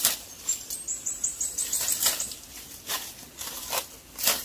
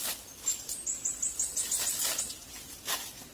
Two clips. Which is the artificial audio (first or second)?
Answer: first